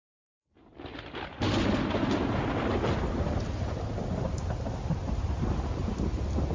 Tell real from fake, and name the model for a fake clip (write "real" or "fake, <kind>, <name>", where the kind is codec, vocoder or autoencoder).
real